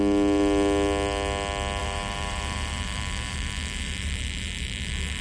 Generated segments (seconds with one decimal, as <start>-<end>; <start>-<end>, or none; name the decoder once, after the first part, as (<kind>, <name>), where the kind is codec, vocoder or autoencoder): 1.8-5.2 (vocoder, BigVGAN v2)